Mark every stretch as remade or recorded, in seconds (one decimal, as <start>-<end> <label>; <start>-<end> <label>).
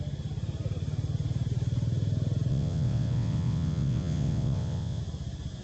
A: 0.0-2.5 recorded; 2.5-5.0 remade; 5.0-5.6 recorded